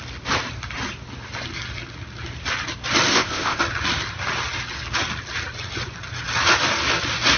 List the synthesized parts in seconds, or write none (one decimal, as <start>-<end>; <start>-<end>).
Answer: 3.1-3.6